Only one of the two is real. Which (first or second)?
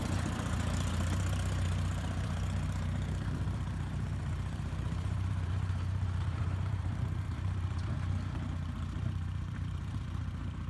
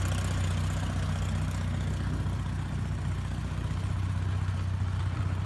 second